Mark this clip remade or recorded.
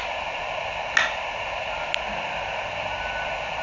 recorded